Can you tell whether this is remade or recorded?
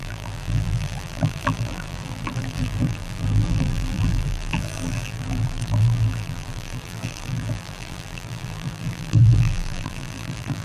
remade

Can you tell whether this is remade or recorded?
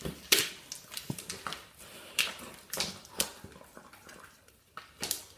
recorded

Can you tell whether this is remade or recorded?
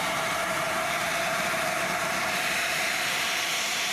remade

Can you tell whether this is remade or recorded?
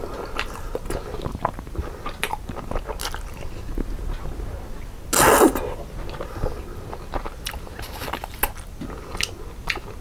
recorded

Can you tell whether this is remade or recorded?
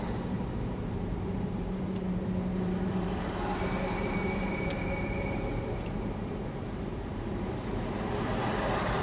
remade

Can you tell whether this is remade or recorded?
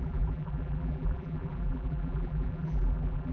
remade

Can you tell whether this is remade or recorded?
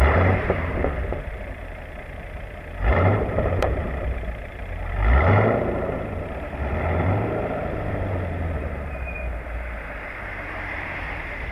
remade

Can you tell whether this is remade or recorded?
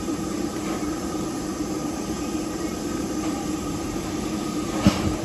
remade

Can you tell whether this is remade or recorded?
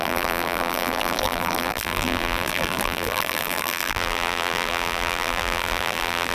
remade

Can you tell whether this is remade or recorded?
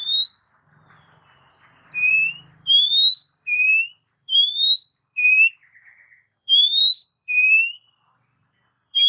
remade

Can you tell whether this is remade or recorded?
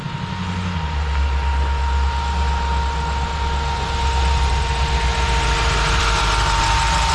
recorded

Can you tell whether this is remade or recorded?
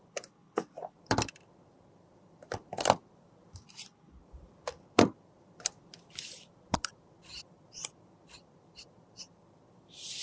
remade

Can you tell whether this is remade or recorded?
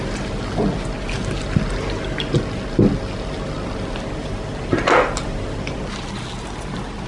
recorded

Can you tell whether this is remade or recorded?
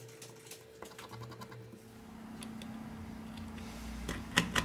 recorded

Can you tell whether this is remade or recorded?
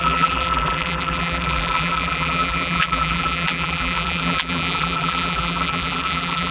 remade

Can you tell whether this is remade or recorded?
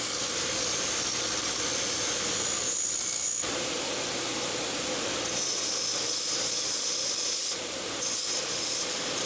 remade